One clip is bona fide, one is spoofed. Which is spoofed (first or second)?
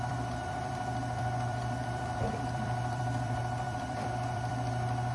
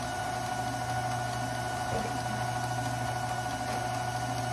first